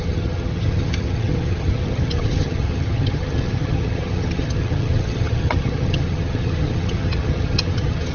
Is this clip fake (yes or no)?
yes